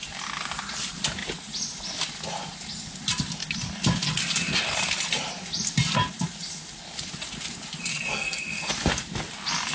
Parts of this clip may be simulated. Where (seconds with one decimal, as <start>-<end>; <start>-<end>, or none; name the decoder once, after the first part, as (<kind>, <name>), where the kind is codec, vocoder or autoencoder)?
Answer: 7.9-8.7 (codec, SNAC)